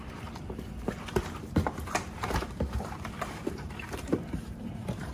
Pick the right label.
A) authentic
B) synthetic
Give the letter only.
B